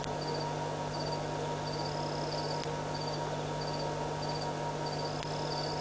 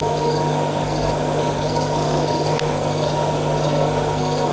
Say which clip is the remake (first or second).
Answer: second